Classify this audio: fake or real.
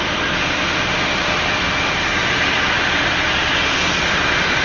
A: fake